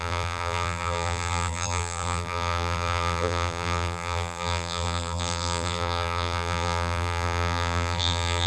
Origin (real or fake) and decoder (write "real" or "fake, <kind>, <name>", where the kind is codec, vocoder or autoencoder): fake, vocoder, BigVGAN v2